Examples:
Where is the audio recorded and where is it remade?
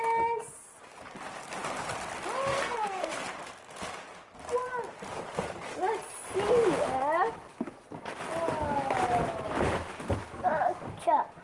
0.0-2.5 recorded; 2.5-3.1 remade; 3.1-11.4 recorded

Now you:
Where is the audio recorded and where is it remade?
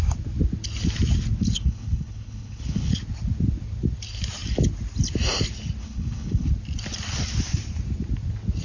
0.0-1.4 recorded; 1.4-3.0 remade; 3.0-5.8 recorded; 5.8-6.5 remade; 6.5-8.6 recorded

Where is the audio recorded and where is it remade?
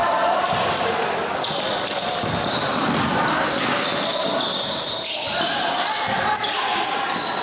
0.0-7.4 recorded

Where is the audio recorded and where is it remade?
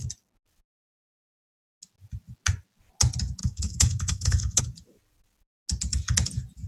0.0-3.4 recorded; 3.4-4.6 remade; 4.6-6.7 recorded